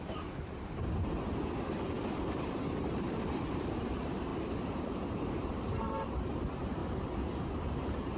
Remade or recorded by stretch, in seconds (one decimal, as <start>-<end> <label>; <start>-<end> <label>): 0.0-0.8 remade; 0.8-2.8 recorded; 2.8-4.3 remade; 4.3-4.8 recorded; 4.8-6.8 remade; 6.8-7.5 recorded; 7.5-8.2 remade